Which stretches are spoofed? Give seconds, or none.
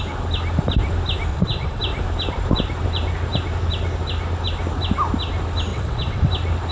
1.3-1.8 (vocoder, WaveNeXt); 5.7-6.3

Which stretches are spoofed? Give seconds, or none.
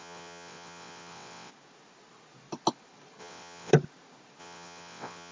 0.0-1.5 (vocoder, WaveNeXt); 3.2-3.7; 4.4-5.3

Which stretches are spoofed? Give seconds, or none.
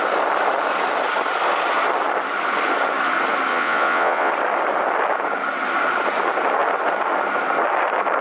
3.5-4.3 (vocoder, WaveNeXt)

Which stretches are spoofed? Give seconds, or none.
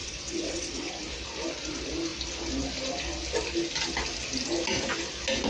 0.0-0.9 (vocoder, WaveNeXt)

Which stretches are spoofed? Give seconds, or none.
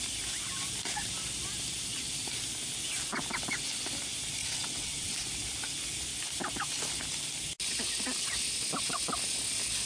4.4-5.2 (vocoder, WaveNeXt)